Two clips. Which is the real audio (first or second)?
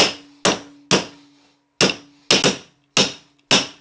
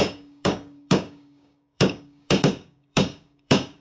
first